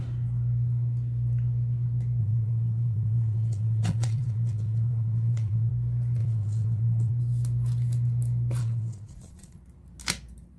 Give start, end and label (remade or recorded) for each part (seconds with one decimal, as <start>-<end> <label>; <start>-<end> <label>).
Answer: 0.0-2.2 recorded; 2.2-5.7 remade; 5.7-6.2 recorded; 6.2-7.1 remade; 7.1-8.6 recorded; 8.6-9.6 remade; 9.6-10.6 recorded